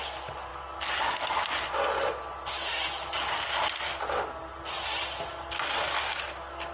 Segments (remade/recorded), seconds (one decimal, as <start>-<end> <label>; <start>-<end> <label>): 0.0-6.7 recorded